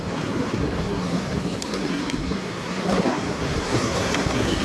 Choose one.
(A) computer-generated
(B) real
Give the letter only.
A